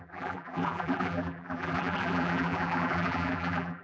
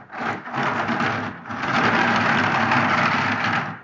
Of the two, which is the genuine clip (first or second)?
second